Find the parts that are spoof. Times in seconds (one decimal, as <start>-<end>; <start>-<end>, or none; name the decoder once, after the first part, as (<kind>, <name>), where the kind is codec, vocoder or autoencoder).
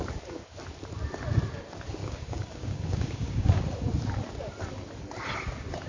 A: 2.0-3.6 (codec, DAC)